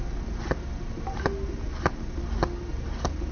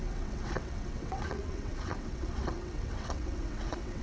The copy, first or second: second